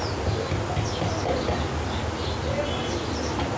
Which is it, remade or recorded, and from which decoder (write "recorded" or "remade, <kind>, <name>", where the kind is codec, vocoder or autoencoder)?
recorded